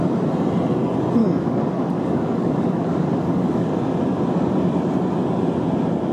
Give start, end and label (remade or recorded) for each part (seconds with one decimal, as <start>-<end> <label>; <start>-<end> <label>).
0.0-1.2 recorded; 1.2-3.7 remade; 3.7-6.1 recorded